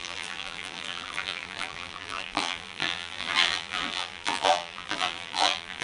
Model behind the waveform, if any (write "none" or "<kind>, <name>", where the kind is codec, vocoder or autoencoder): vocoder, BigVGAN v2